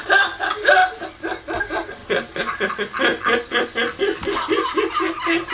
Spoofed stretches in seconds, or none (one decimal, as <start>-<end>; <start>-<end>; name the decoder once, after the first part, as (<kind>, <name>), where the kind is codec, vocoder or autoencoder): none